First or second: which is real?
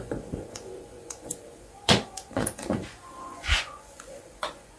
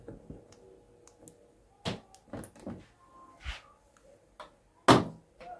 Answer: second